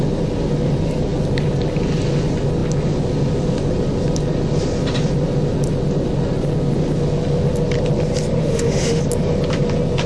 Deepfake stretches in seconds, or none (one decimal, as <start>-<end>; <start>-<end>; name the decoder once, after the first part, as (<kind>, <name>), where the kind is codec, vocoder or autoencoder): 8.4-9.0 (autoencoder, DAC-VAE)